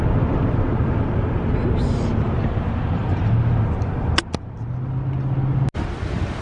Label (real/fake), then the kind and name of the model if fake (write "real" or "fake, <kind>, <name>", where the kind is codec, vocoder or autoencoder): real